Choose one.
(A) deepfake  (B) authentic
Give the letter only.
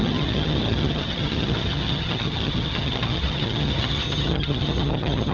A